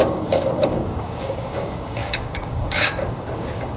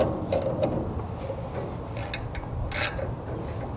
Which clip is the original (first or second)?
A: second